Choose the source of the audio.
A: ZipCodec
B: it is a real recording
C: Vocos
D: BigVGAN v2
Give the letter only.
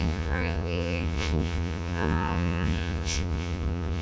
C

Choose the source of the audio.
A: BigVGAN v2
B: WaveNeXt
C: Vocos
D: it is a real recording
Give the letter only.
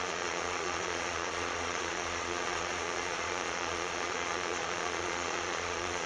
C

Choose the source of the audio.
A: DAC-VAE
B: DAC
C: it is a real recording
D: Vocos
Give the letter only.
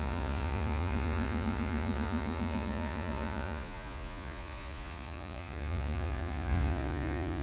D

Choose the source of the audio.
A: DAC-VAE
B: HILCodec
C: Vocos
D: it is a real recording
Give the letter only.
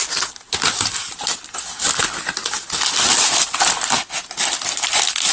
D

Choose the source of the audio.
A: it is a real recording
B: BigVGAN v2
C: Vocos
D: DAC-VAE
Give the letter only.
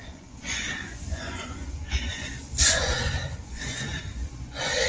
C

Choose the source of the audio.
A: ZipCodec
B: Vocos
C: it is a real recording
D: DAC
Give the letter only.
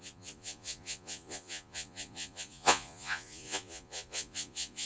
B